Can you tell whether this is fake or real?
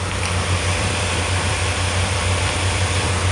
fake